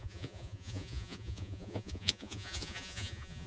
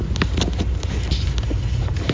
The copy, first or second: first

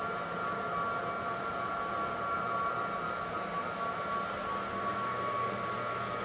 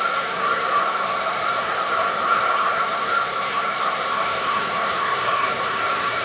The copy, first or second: second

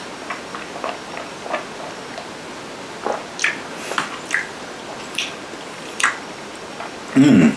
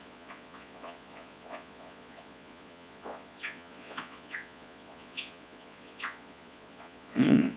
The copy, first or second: second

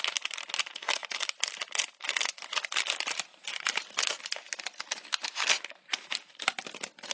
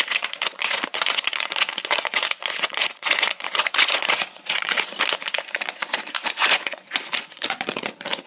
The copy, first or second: second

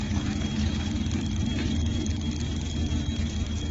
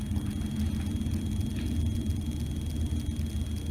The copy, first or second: first